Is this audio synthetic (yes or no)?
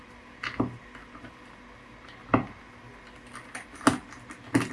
no